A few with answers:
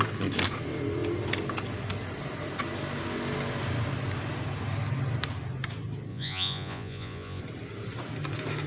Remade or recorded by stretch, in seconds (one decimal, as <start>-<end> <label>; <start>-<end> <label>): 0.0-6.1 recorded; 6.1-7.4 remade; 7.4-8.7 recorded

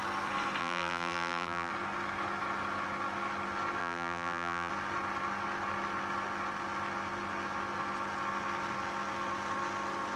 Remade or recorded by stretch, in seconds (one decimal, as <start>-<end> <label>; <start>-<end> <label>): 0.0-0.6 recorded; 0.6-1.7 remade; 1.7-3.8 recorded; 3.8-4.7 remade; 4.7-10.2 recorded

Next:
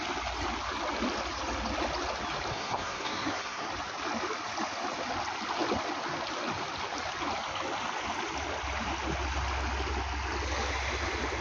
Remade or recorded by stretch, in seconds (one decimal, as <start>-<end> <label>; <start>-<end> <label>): 0.0-2.5 recorded; 2.5-3.7 remade; 3.7-11.4 recorded

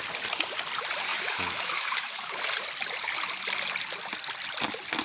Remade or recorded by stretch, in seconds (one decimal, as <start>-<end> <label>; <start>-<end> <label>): 0.0-1.1 recorded; 1.1-2.4 remade; 2.4-5.0 recorded